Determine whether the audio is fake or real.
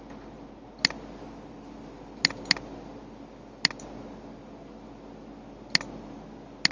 real